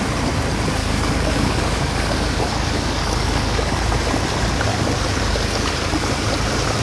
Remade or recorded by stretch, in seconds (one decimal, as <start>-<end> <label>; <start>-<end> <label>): 0.0-0.8 recorded; 0.8-3.8 remade; 3.8-4.7 recorded; 4.7-6.3 remade; 6.3-6.8 recorded